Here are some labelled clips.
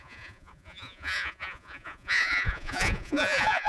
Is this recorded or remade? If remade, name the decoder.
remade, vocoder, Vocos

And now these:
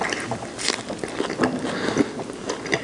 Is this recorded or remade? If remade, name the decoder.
recorded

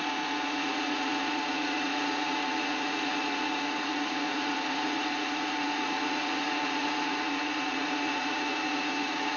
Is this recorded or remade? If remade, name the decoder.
remade, vocoder, Vocos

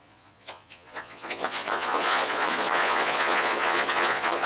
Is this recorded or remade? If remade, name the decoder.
remade, vocoder, Vocos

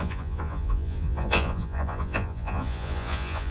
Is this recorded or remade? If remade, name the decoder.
remade, vocoder, Vocos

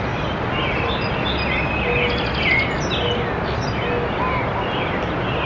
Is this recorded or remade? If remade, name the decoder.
recorded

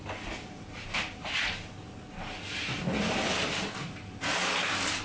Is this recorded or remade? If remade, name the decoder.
recorded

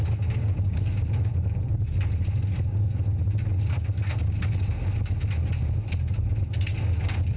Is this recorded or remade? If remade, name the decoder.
recorded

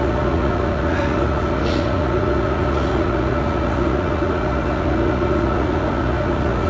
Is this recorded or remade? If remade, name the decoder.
remade, vocoder, Vocos